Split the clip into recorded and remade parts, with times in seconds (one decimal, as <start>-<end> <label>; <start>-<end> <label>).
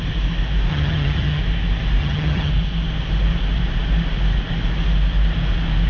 0.0-0.7 recorded; 0.7-1.4 remade; 1.4-2.0 recorded; 2.0-2.5 remade; 2.5-5.9 recorded